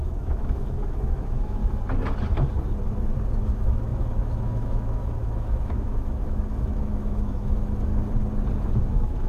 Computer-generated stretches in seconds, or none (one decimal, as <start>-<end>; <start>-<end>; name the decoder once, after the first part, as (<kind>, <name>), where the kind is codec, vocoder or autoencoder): 0.0-1.6 (autoencoder, DAC-VAE); 3.4-7.9; 8.8-9.3